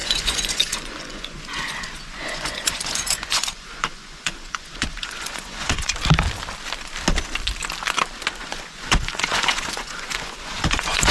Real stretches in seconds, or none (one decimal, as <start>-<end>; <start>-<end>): 5.9-8.4